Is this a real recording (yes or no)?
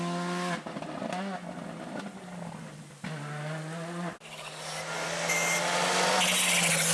yes